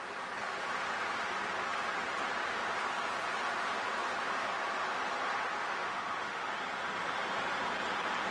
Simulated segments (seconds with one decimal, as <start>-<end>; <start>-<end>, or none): 5.6-6.5